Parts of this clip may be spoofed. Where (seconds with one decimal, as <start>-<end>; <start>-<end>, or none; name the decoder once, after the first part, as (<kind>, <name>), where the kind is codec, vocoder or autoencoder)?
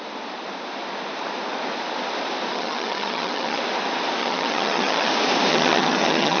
2.5-3.6 (vocoder, HiFi-GAN); 4.2-5.1; 5.5-6.4